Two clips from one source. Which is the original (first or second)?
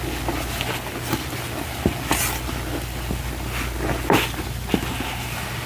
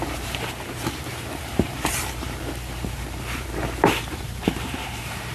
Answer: first